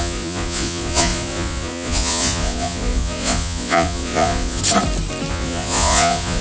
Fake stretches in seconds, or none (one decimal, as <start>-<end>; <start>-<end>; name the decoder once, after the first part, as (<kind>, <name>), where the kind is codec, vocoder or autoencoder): 0.0-4.6 (vocoder, Vocos); 5.3-6.4